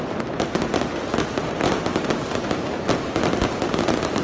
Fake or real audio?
real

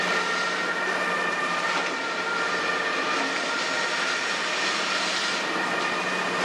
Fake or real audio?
real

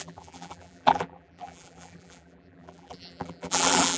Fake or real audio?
fake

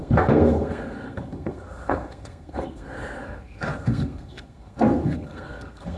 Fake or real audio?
fake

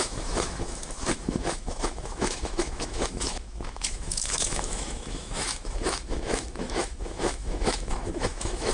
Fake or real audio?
fake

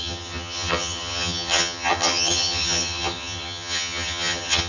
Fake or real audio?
fake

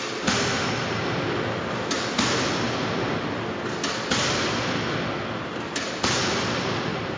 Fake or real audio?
real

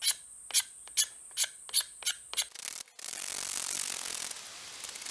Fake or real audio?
real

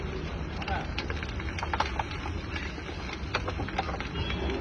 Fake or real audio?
real